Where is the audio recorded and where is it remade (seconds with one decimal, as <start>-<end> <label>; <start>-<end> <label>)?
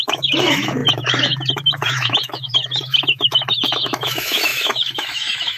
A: 0.0-5.6 remade